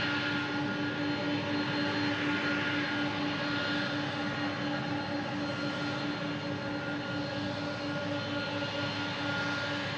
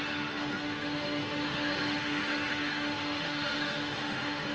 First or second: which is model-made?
second